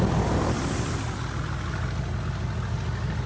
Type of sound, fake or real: real